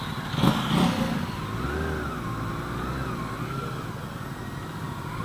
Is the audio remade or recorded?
recorded